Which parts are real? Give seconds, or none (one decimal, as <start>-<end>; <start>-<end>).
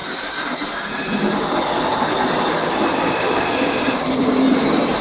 0.5-1.9